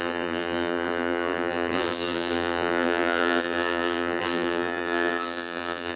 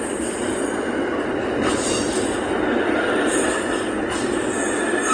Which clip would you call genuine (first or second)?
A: second